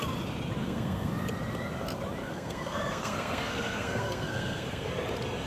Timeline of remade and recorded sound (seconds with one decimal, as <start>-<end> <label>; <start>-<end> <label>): 0.0-0.6 recorded; 0.6-1.1 remade; 1.1-2.2 recorded; 2.2-4.9 remade; 4.9-5.5 recorded